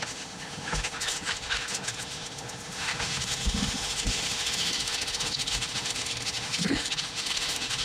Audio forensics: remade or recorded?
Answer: remade